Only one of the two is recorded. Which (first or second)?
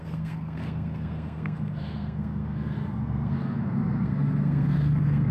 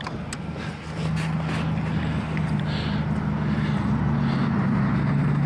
second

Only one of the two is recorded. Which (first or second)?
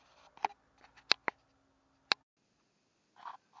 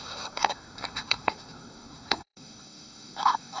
first